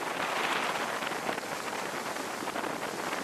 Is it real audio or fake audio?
real